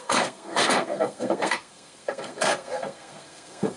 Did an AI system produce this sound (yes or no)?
yes